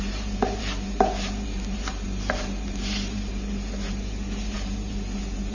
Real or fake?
fake